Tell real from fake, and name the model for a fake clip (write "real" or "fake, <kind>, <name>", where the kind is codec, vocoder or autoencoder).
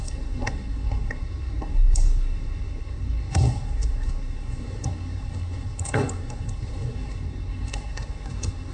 fake, codec, SNAC